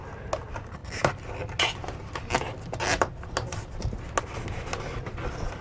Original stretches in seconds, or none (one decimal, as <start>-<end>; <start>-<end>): 0.0-5.6